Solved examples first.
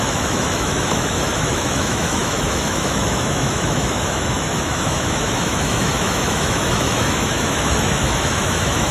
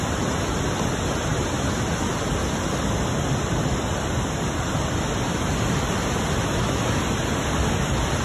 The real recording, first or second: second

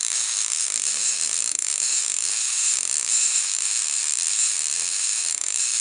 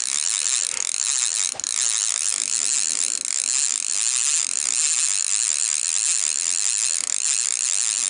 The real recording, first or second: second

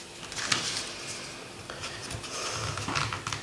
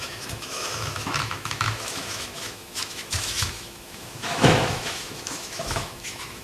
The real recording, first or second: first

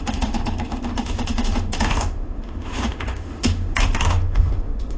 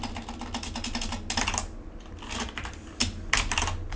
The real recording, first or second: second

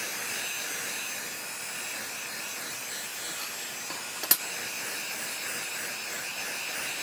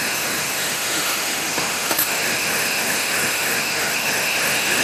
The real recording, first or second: first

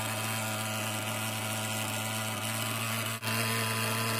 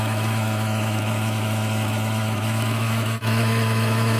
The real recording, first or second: first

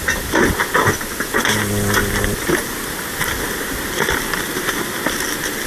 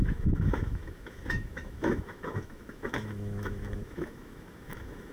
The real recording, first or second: first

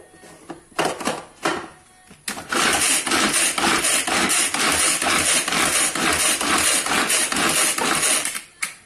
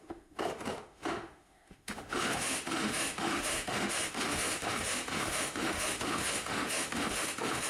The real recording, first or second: first